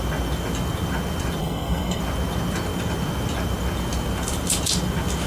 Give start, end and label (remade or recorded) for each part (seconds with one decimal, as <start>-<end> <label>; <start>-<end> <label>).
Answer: 0.0-1.4 recorded; 1.4-2.0 remade; 2.0-5.3 recorded